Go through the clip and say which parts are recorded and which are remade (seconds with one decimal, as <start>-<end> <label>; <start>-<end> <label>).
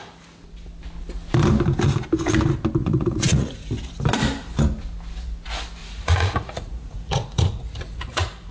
0.0-2.8 recorded; 2.8-3.7 remade; 3.7-5.8 recorded; 5.8-8.5 remade